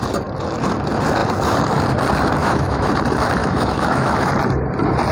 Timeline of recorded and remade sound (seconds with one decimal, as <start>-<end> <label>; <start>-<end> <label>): 0.0-2.4 recorded; 2.4-2.9 remade; 2.9-3.4 recorded; 3.4-4.3 remade; 4.3-5.1 recorded